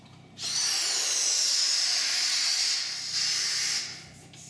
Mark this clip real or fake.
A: real